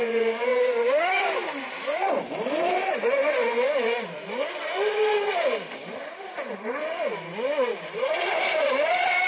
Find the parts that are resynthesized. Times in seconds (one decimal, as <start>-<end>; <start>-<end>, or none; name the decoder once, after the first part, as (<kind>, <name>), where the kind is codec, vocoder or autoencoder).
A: none